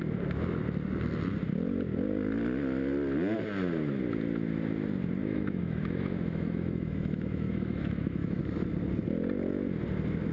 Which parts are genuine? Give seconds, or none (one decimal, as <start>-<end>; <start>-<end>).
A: 0.0-5.2; 8.4-10.3